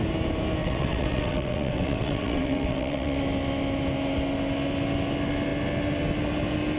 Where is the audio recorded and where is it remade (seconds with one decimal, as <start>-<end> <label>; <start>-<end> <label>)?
0.0-0.6 recorded; 0.6-3.2 remade; 3.2-6.8 recorded

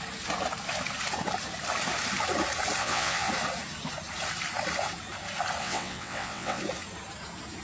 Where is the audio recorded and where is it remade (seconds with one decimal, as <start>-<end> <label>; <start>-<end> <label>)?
0.0-2.8 recorded; 2.8-3.3 remade; 3.3-5.6 recorded; 5.6-6.6 remade; 6.6-7.6 recorded